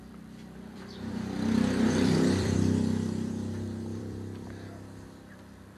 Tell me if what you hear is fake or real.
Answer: fake